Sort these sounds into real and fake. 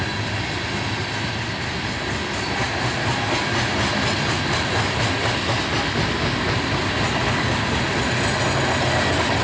real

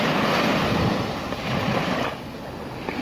real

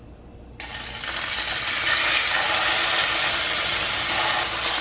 real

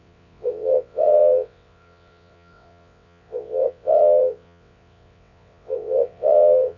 fake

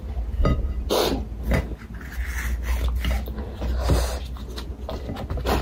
real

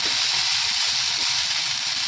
real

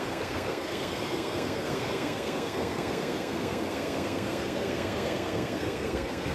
fake